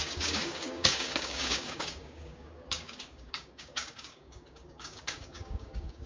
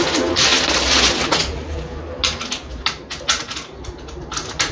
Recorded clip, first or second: second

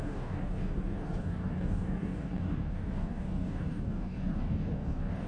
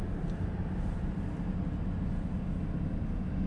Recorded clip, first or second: second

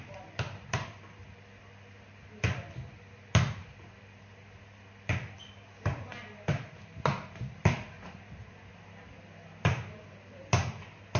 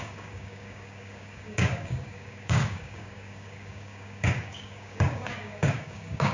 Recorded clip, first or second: first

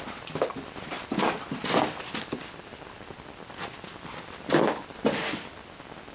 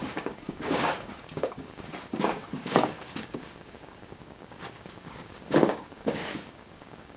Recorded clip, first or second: first